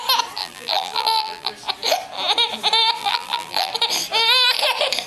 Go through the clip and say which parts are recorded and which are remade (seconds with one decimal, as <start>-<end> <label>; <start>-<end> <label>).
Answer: 0.0-0.4 recorded; 0.4-1.5 remade; 1.5-3.0 recorded; 3.0-3.7 remade; 3.7-5.1 recorded